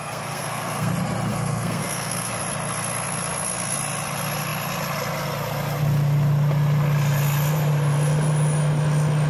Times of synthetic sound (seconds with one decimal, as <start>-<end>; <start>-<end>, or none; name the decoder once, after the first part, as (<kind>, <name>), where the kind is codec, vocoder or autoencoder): 0.0-0.9 (codec, SNAC); 1.3-2.3